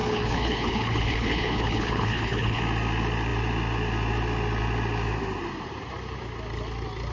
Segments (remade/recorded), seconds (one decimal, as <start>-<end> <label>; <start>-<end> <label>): 0.0-2.6 remade; 2.6-7.1 recorded